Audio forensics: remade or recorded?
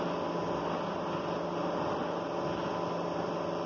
recorded